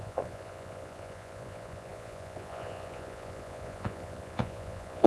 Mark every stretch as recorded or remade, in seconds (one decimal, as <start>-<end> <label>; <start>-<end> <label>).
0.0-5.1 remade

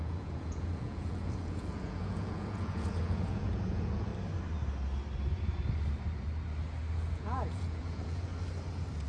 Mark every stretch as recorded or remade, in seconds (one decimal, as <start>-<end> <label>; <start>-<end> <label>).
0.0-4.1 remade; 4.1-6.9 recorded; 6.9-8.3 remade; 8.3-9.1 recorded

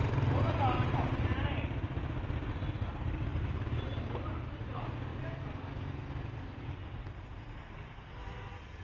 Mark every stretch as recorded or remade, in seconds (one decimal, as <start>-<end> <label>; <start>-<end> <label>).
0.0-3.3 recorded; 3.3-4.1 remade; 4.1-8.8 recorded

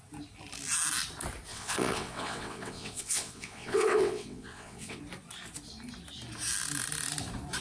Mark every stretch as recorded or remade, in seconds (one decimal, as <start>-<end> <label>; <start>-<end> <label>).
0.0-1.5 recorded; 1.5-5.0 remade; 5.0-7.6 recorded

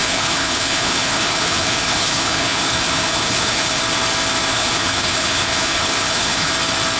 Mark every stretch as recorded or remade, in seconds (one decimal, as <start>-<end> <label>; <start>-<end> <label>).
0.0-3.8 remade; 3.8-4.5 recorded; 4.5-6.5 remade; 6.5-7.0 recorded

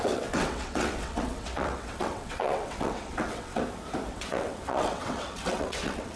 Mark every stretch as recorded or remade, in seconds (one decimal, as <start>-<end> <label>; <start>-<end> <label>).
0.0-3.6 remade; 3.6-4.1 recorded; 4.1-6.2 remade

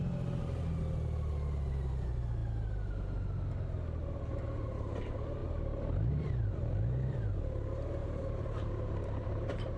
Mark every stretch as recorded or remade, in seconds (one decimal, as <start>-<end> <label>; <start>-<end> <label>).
0.0-8.0 recorded; 8.0-9.8 remade

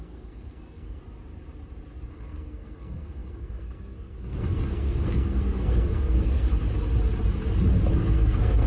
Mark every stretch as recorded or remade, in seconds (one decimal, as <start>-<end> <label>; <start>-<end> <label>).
0.0-1.0 remade; 1.0-2.1 recorded; 2.1-6.5 remade; 6.5-7.9 recorded; 7.9-8.7 remade